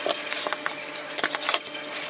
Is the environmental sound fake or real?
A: real